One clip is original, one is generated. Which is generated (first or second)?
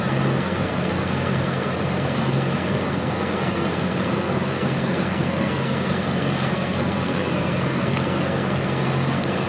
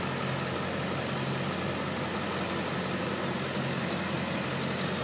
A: first